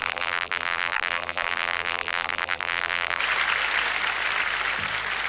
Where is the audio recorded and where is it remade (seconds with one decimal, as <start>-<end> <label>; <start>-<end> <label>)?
0.0-3.2 remade; 3.2-5.3 recorded